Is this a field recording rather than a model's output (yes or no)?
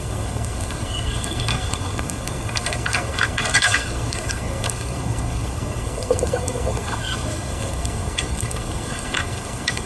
no